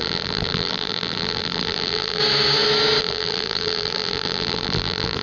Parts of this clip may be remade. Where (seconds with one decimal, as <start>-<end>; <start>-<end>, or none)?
0.0-2.2; 3.0-5.2